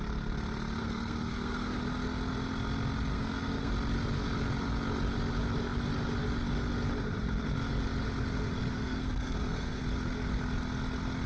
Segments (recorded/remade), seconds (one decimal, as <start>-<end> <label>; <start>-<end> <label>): 0.0-0.8 recorded; 0.8-1.8 remade; 1.8-3.1 recorded; 3.1-3.7 remade; 3.7-8.7 recorded; 8.7-9.8 remade; 9.8-11.3 recorded